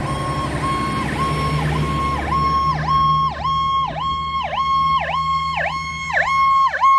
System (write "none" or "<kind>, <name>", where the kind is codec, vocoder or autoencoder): none